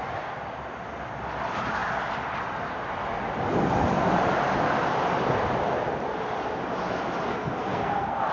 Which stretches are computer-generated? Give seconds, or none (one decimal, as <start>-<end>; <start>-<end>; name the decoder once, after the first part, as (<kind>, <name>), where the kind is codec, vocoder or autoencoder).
7.3-8.3 (codec, SNAC)